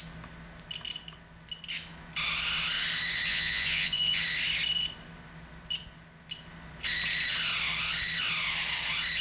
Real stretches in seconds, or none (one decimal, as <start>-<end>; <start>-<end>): 0.0-3.3; 4.2-9.2